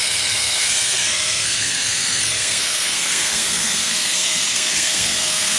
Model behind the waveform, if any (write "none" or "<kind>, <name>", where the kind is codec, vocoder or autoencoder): codec, SNAC